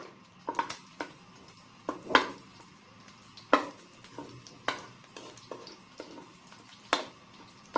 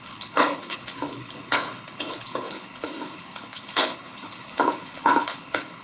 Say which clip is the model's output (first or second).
second